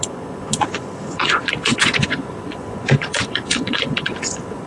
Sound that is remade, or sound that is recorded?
remade